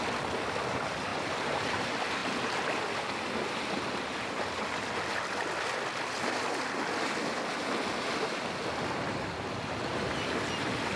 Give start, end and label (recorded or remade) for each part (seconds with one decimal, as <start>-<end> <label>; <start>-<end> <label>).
0.0-1.1 recorded; 1.1-1.8 remade; 1.8-11.0 recorded